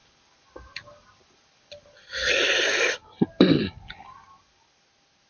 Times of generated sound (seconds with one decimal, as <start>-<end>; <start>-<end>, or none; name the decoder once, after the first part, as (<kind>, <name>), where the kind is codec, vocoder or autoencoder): none